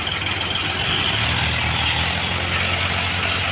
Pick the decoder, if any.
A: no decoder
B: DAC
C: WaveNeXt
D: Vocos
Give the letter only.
A